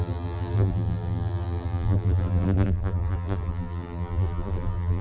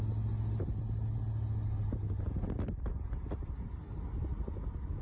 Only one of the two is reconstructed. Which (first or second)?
first